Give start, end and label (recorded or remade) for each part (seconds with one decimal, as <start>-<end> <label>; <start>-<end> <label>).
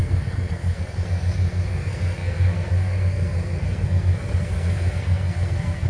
0.0-5.9 remade